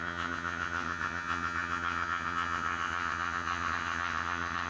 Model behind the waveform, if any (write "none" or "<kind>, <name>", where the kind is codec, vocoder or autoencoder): vocoder, HiFi-GAN